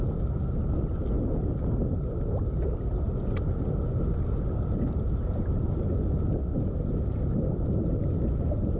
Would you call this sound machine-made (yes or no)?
no